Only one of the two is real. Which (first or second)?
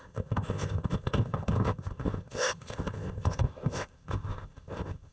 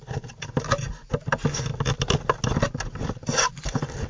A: second